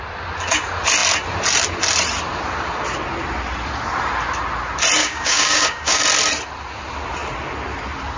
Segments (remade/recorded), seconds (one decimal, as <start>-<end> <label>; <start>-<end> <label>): 0.0-5.0 recorded; 5.0-6.0 remade; 6.0-8.2 recorded